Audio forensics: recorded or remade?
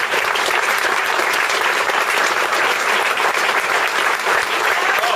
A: remade